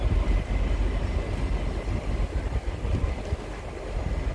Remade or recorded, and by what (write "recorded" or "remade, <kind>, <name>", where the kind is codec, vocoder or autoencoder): recorded